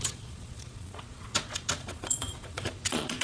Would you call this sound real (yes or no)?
no